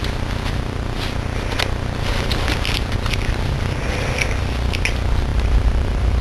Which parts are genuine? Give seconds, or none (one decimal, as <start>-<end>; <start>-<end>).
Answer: 0.0-5.3